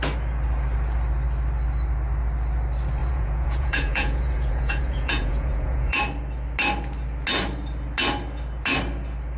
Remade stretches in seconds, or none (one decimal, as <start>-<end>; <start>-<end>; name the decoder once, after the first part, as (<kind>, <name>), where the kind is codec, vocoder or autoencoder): 3.0-6.0 (vocoder, Vocos)